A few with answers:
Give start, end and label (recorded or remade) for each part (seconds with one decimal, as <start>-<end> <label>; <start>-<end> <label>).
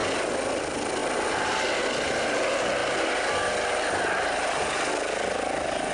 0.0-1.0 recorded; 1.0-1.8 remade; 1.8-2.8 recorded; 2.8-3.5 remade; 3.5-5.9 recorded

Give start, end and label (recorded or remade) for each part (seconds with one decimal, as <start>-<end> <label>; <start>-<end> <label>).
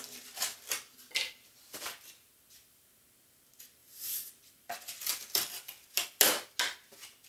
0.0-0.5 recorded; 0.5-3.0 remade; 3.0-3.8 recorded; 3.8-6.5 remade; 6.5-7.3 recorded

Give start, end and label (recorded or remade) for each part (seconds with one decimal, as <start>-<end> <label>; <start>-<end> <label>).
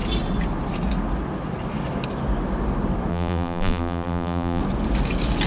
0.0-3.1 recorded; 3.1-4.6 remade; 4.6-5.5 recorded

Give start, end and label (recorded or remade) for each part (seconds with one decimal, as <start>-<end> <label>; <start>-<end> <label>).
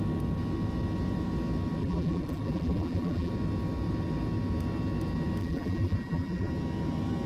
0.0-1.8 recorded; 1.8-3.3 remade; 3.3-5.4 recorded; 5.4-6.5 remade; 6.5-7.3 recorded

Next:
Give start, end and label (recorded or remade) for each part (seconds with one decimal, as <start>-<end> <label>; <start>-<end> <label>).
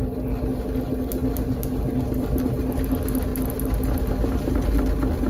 0.0-5.3 recorded